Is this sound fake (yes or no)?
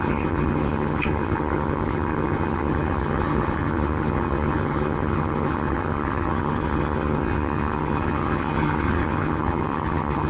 yes